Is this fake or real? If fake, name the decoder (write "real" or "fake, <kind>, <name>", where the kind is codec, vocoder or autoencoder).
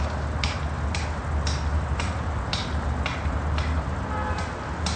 real